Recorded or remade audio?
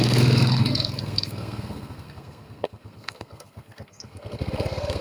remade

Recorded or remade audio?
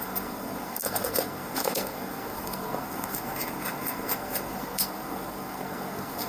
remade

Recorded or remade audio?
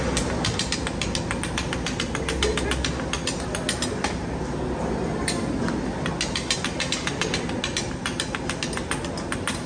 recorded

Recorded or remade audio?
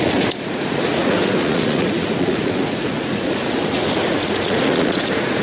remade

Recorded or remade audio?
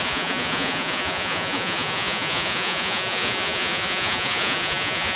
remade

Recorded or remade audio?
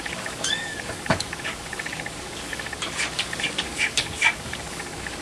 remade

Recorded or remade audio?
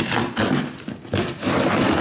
recorded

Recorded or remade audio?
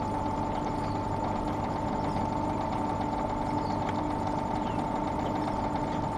recorded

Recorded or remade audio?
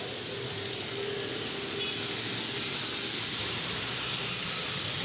recorded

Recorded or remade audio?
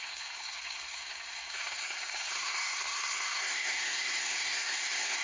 remade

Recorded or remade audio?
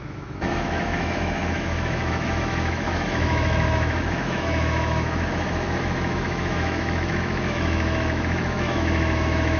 remade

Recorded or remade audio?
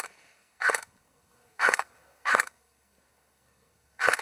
remade